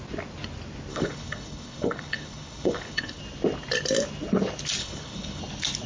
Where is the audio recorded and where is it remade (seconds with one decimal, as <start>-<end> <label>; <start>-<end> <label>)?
0.0-0.9 recorded; 0.9-3.2 remade; 3.2-4.8 recorded; 4.8-5.4 remade; 5.4-5.9 recorded